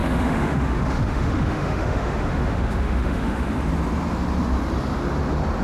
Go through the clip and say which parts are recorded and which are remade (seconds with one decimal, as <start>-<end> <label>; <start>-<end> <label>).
0.0-3.4 remade; 3.4-5.6 recorded